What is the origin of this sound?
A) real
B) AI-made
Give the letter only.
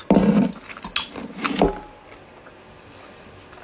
A